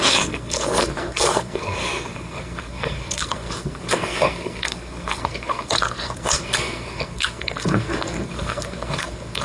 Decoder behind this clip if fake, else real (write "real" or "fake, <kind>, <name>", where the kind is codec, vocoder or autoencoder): fake, codec, SNAC